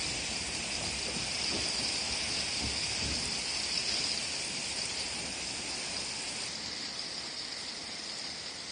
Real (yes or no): yes